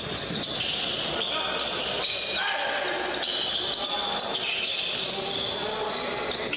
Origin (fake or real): real